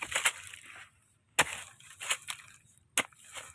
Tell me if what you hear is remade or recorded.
recorded